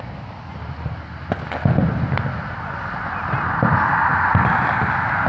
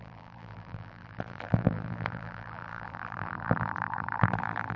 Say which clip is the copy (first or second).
second